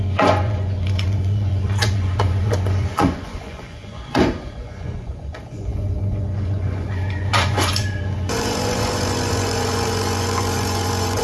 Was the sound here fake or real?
fake